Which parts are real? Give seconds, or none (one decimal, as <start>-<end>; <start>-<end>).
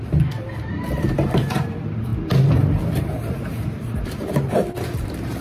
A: none